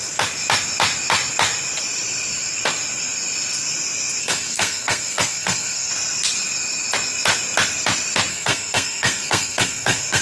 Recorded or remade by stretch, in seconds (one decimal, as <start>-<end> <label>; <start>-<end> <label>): 0.0-4.2 recorded; 4.2-5.9 remade; 5.9-8.3 recorded; 8.3-10.2 remade